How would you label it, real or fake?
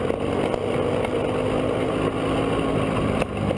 real